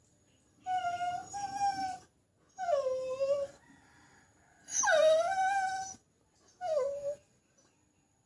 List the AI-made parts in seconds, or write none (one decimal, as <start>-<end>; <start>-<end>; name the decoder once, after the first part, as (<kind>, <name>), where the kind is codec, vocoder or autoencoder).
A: none